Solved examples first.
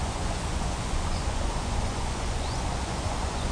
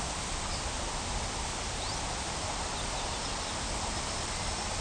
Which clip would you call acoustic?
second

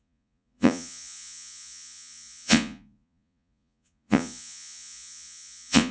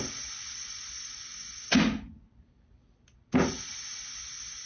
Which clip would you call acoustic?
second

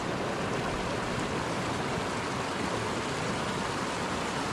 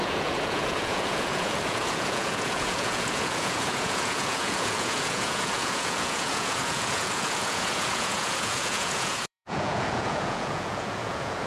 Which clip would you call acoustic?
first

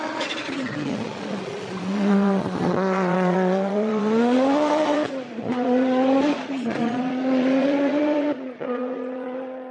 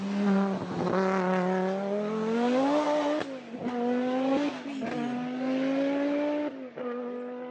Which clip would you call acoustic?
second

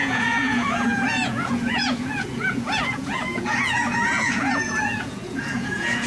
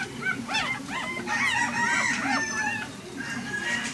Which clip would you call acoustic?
second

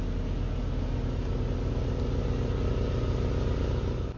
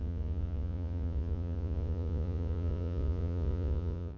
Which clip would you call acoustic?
first